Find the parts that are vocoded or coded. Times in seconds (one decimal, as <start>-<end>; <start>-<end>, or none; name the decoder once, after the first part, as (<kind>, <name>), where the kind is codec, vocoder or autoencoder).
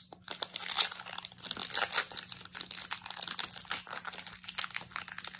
none